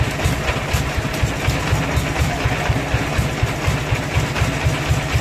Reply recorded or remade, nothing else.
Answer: recorded